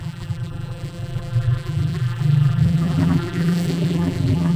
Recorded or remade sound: remade